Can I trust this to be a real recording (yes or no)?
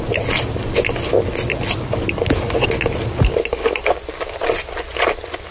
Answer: yes